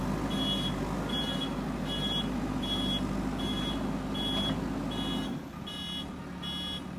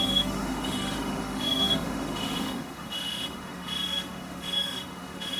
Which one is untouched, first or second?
first